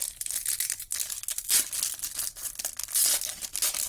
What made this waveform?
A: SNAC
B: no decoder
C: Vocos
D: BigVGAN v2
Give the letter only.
B